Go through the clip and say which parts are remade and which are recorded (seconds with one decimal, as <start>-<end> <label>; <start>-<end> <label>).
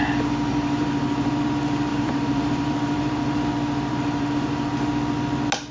0.0-0.5 recorded; 0.5-1.3 remade; 1.3-1.9 recorded; 1.9-3.4 remade; 3.4-3.9 recorded; 3.9-4.7 remade; 4.7-5.7 recorded